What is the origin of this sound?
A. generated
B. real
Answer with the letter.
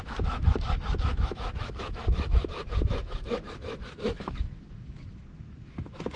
A